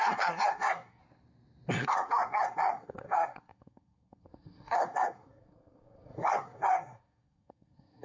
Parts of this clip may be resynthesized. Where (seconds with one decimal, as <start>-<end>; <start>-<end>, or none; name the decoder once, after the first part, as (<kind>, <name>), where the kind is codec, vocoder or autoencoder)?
0.0-1.0 (codec, SNAC); 1.7-8.0